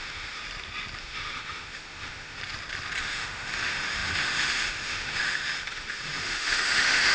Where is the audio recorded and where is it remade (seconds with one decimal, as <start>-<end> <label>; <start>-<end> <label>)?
0.0-0.4 remade; 0.4-1.0 recorded; 1.0-2.4 remade; 2.4-3.0 recorded; 3.0-7.1 remade